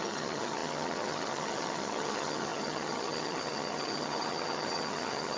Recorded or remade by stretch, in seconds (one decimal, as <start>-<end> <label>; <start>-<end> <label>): 0.0-5.4 remade